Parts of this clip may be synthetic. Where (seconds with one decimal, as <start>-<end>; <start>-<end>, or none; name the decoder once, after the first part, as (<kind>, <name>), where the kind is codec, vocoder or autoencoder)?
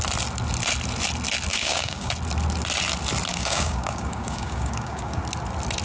1.5-2.1 (codec, DAC); 3.3-5.2